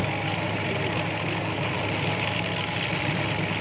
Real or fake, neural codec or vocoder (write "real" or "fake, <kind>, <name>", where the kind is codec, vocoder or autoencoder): real